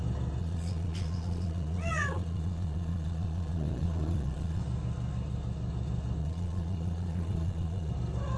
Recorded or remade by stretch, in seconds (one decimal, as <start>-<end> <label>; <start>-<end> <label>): 0.0-0.4 recorded; 0.4-4.6 remade; 4.6-6.2 recorded; 6.2-7.9 remade; 7.9-8.4 recorded